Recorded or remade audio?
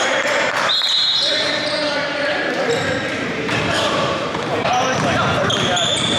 remade